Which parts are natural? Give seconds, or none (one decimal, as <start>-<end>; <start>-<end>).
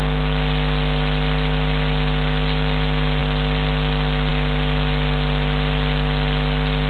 0.0-6.9